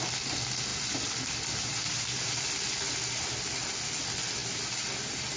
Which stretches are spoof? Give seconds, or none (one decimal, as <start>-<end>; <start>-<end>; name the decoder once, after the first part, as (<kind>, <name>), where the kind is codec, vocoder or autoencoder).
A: none